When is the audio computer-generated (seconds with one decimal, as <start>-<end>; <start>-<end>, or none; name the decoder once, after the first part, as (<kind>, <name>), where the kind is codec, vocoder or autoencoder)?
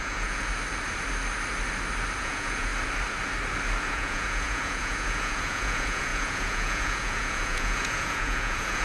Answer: 0.0-0.5 (vocoder, Vocos); 2.2-2.7; 3.8-8.8